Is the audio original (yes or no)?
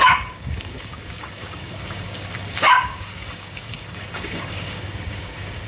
no